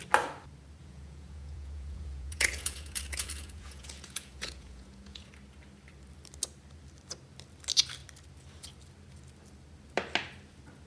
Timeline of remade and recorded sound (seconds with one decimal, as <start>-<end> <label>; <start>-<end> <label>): 0.0-0.8 recorded; 0.8-5.3 remade; 5.3-10.9 recorded